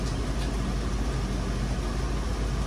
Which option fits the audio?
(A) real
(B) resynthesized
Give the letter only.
A